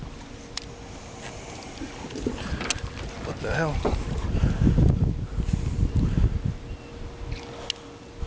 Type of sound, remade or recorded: recorded